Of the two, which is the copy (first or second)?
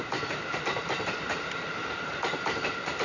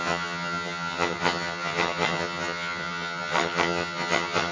second